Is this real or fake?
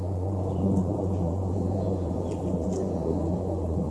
fake